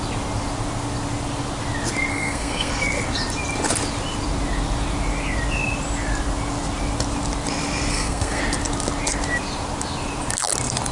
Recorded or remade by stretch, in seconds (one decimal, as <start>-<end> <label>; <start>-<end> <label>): 0.0-2.1 recorded; 2.1-2.7 remade; 2.7-7.9 recorded; 7.9-8.4 remade; 8.4-10.9 recorded